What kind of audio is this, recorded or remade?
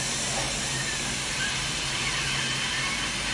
recorded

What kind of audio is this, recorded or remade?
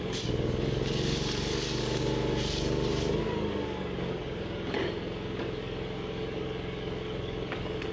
remade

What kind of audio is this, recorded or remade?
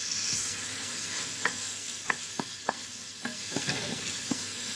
remade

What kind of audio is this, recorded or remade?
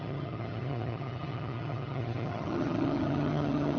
remade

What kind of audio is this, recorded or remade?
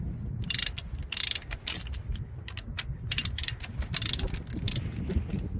recorded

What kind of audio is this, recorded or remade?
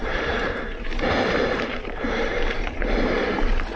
remade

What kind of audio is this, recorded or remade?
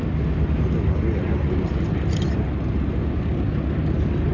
recorded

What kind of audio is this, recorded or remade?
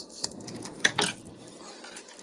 recorded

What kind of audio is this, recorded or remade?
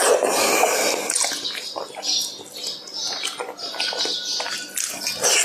recorded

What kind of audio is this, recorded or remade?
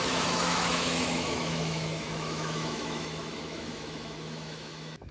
remade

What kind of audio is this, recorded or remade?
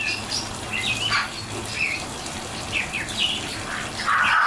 remade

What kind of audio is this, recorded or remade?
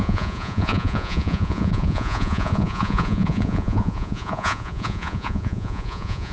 remade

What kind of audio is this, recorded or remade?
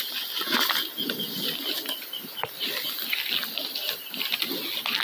recorded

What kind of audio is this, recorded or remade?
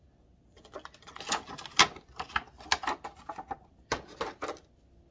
recorded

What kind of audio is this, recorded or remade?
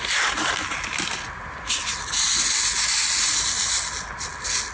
recorded